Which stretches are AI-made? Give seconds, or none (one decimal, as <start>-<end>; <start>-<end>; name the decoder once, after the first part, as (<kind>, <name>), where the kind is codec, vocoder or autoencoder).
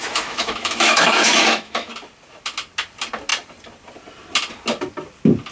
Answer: 0.0-1.9 (autoencoder, DAC-VAE)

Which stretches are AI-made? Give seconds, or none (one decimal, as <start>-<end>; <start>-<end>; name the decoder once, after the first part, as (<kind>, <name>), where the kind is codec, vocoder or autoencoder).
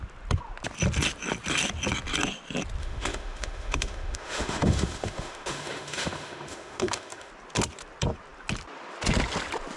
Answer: 2.8-7.3 (autoencoder, DAC-VAE)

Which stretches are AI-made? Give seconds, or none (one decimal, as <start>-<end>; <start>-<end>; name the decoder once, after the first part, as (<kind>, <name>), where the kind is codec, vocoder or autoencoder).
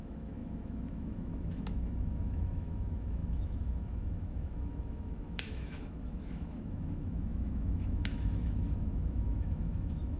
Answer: 0.0-10.2 (autoencoder, DAC-VAE)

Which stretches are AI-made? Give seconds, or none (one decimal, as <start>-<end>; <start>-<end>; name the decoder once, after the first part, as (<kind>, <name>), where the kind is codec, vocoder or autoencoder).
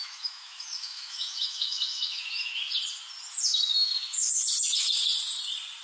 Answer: 0.0-2.7 (autoencoder, DAC-VAE); 3.5-4.4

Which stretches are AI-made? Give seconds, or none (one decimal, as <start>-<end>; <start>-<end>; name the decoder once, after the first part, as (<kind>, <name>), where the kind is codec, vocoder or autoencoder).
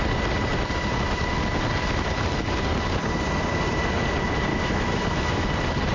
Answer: 4.5-5.5 (autoencoder, DAC-VAE)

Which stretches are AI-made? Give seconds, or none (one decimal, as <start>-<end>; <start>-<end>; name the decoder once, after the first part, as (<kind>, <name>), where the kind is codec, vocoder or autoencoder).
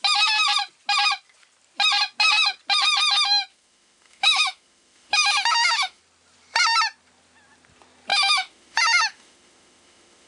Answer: 3.5-6.0 (autoencoder, DAC-VAE); 8.1-10.3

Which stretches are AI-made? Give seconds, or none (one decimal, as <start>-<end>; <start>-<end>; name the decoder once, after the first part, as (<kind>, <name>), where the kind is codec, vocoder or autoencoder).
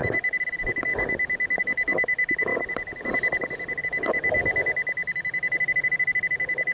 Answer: 0.0-0.9 (autoencoder, DAC-VAE); 1.6-2.5; 3.8-4.4; 5.1-6.7